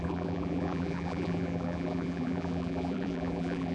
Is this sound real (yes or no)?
no